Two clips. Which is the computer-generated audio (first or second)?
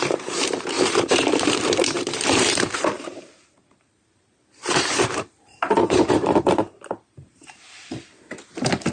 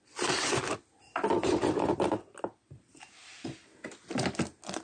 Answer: first